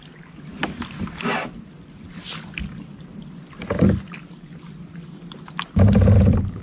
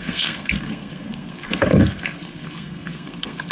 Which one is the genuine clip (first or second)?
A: first